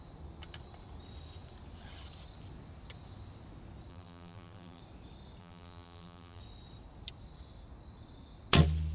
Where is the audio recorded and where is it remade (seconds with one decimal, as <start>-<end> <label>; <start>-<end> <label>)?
0.0-3.9 recorded; 3.9-4.8 remade; 4.8-5.4 recorded; 5.4-6.4 remade; 6.4-8.9 recorded